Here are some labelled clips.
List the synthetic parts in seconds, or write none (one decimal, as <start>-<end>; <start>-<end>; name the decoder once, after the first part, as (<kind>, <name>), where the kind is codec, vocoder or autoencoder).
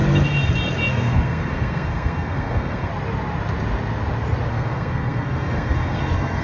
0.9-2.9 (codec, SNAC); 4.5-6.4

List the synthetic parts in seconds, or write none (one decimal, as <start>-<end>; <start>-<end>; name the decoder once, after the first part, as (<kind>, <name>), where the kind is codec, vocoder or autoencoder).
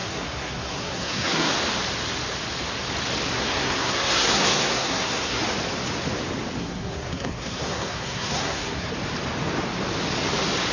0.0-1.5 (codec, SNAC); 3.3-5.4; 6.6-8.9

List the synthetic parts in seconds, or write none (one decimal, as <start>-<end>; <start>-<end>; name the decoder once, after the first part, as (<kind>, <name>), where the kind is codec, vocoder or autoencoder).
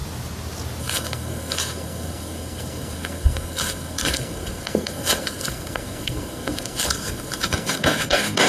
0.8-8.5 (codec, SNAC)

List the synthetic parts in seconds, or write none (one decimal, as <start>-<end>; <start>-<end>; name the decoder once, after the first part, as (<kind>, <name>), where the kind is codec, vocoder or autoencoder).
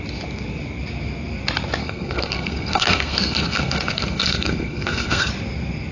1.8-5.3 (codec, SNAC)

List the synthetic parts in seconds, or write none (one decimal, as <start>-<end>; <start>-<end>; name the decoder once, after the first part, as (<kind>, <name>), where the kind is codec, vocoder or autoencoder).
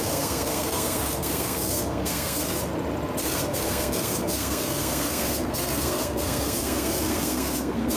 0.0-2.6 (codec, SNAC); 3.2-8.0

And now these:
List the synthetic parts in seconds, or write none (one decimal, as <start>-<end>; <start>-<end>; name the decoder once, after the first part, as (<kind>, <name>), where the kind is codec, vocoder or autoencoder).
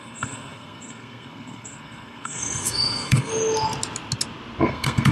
0.0-3.3 (codec, SNAC); 4.6-5.1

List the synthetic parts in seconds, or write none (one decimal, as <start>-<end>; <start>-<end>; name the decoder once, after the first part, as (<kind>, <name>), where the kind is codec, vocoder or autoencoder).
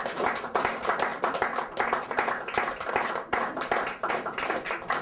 none